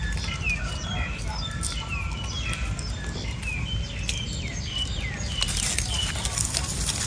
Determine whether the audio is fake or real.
real